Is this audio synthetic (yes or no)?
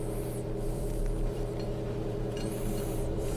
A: yes